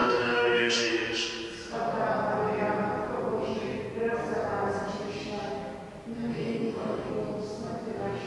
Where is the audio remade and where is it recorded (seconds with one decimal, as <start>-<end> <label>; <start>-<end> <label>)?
0.0-0.9 remade; 0.9-6.3 recorded; 6.3-7.1 remade; 7.1-8.3 recorded